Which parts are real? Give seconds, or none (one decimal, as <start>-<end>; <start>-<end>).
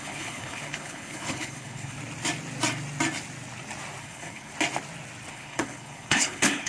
2.0-4.0; 4.5-5.3